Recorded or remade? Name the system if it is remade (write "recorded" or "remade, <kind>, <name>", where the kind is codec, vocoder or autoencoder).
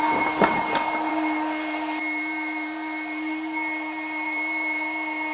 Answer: remade, vocoder, BigVGAN v2